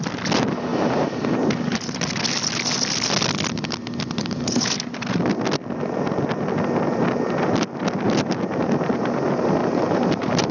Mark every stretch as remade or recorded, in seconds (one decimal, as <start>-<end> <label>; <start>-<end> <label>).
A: 0.0-0.7 recorded; 0.7-1.5 remade; 1.5-4.2 recorded; 4.2-5.2 remade; 5.2-9.6 recorded; 9.6-10.5 remade